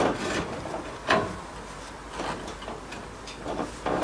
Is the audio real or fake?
real